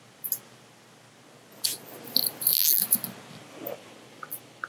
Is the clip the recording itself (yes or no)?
yes